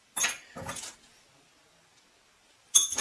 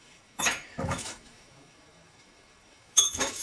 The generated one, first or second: second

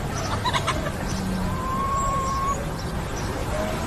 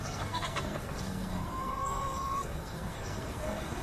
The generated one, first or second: second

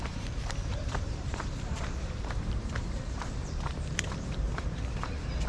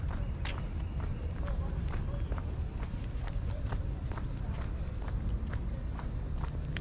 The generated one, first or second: first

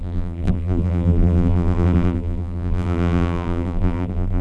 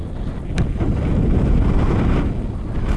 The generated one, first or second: first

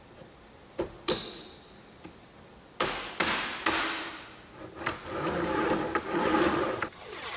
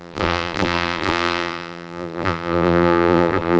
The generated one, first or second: second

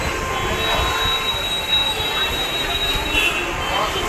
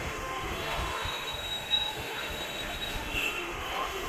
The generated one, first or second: second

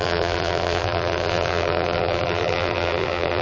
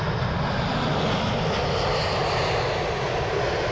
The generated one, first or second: first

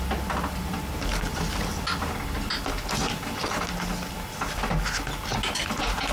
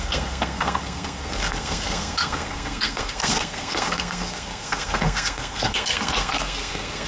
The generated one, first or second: second